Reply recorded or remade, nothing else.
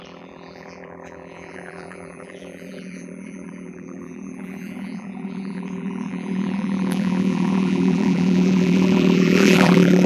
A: remade